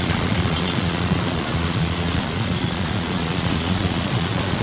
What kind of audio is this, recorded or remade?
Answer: remade